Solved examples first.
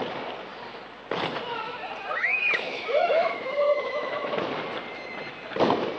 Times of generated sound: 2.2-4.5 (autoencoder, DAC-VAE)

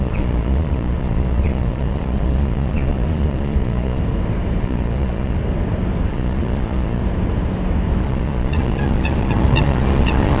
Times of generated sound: 0.0-4.0 (vocoder, Vocos); 4.6-5.4; 6.1-7.0; 8.0-10.4

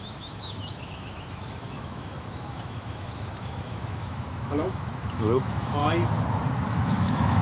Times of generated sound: 0.0-5.8 (autoencoder, DAC-VAE); 6.7-7.4